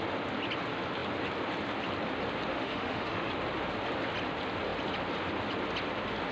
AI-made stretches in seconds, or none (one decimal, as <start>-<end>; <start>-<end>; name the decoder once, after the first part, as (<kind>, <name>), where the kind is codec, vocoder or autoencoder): 2.5-3.3 (autoencoder, DAC-VAE)